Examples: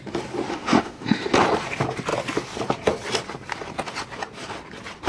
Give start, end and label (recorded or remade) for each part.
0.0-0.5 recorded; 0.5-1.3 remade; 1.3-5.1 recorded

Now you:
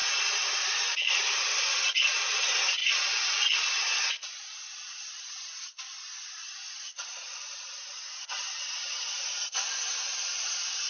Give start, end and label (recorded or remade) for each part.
0.0-2.8 remade; 2.8-3.5 recorded; 3.5-10.9 remade

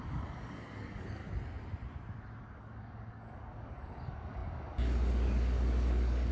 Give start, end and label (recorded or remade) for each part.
0.0-1.2 remade; 1.2-2.4 recorded; 2.4-6.3 remade